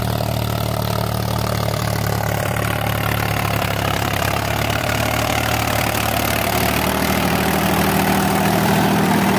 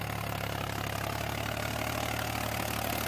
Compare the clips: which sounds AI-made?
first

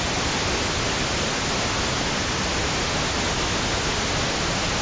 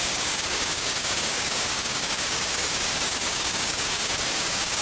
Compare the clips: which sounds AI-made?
second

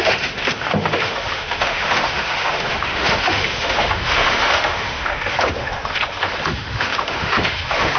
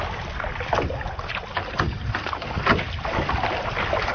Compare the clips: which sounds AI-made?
first